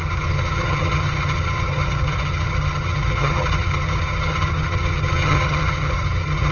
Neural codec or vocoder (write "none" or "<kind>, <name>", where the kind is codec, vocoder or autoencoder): vocoder, HiFi-GAN